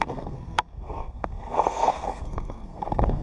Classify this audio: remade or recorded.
remade